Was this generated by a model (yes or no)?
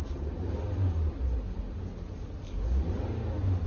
no